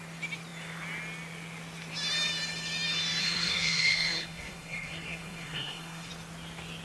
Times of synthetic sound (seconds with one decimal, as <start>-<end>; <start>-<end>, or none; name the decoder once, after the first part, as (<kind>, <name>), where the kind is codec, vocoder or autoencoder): 3.2-6.1 (codec, SNAC)